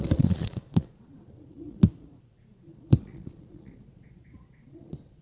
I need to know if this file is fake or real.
fake